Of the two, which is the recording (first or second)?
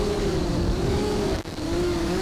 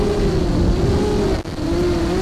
second